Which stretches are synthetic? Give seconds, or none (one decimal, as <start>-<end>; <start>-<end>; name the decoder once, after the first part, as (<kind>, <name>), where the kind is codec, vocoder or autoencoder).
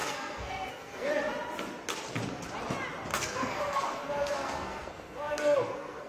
0.0-1.1 (codec, SNAC); 3.1-6.1